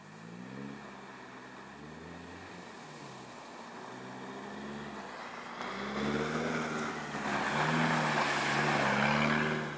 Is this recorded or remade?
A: recorded